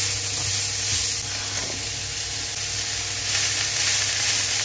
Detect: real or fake real